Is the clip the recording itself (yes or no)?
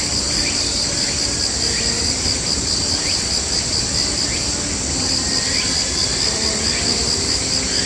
yes